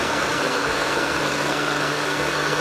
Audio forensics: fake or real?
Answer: fake